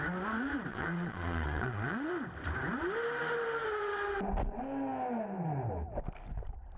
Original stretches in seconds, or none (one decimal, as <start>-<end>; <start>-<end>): 0.0-0.7; 2.1-6.8